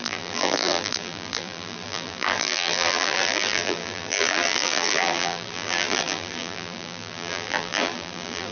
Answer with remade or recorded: remade